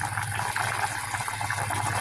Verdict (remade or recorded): recorded